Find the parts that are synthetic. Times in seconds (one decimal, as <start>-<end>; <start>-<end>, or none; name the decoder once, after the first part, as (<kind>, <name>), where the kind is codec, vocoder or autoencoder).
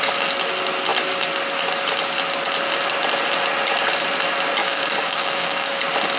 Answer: 4.6-5.8 (codec, DAC)